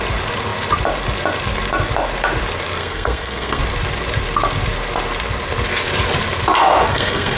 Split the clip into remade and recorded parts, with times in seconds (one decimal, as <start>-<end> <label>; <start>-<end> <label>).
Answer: 0.0-2.8 recorded; 2.8-3.6 remade; 3.6-6.9 recorded; 6.9-7.4 remade